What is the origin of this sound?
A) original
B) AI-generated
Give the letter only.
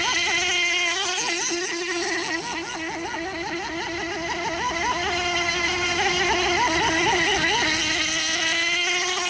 A